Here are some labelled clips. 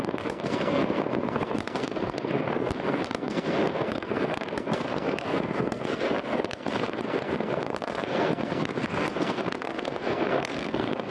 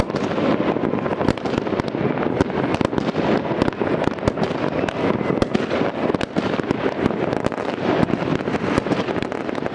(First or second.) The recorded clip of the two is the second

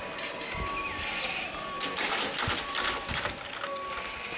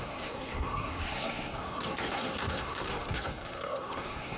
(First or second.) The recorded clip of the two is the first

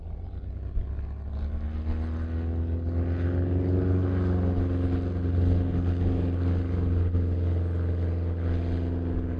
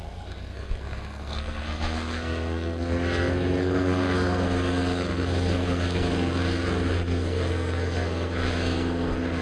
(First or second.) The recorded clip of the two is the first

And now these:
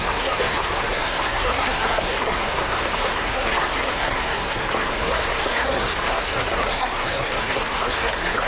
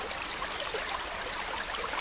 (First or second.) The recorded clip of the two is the second